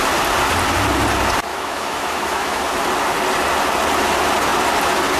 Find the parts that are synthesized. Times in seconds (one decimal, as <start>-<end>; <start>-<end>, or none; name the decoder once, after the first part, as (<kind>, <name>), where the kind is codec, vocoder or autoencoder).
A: 1.5-2.6 (autoencoder, DAC-VAE)